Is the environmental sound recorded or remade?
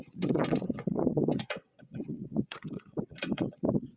remade